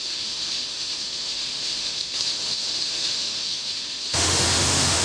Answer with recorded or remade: remade